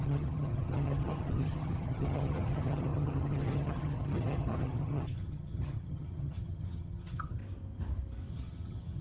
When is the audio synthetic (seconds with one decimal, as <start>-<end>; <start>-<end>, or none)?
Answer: 0.0-7.4; 8.3-9.0